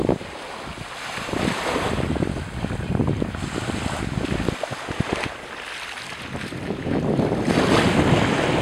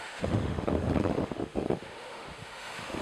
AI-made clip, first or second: second